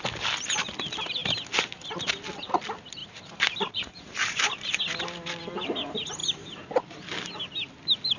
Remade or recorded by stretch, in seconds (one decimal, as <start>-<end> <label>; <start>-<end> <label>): 0.0-3.0 recorded; 3.0-4.8 remade; 4.8-6.2 recorded; 6.2-6.8 remade; 6.8-8.2 recorded